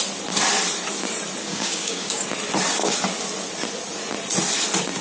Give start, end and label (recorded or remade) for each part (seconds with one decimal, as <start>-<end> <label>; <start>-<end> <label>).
0.0-1.4 recorded; 1.4-2.3 remade; 2.3-5.0 recorded